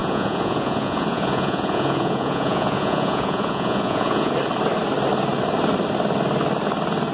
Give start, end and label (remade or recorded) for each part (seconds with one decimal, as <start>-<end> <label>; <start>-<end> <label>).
0.0-4.3 remade; 4.3-7.1 recorded